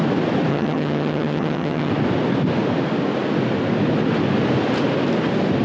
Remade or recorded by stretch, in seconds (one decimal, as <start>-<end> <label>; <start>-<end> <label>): 0.0-0.5 recorded; 0.5-1.9 remade; 1.9-5.6 recorded